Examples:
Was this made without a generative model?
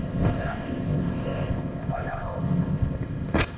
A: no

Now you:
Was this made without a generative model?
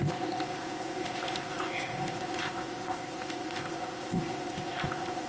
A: no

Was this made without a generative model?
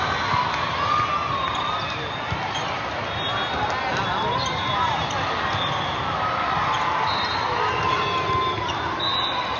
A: yes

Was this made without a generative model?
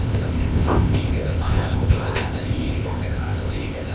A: no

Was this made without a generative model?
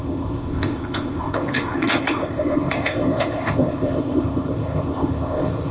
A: no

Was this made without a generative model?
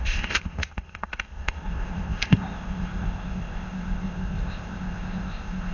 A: no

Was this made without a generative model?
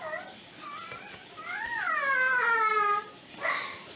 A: yes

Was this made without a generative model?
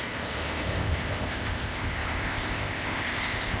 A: no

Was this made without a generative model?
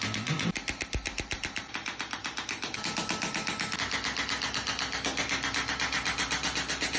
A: yes